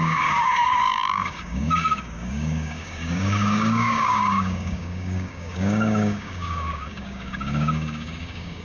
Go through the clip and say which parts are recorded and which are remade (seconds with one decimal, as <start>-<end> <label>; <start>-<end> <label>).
0.0-8.6 remade